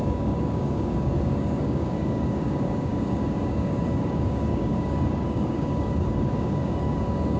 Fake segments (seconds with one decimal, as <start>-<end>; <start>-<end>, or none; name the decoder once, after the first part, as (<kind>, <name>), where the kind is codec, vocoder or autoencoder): 0.0-7.4 (codec, DAC)